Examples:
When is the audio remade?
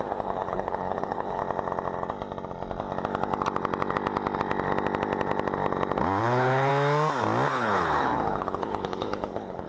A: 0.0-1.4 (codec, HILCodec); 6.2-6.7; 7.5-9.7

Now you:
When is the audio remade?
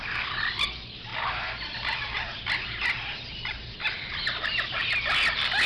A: 0.0-4.8 (vocoder, BigVGAN v2)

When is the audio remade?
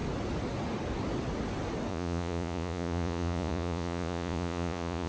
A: 1.9-5.1 (vocoder, Vocos)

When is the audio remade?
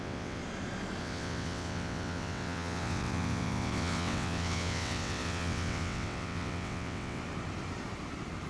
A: 0.0-0.4 (vocoder, WaveNeXt); 1.0-7.2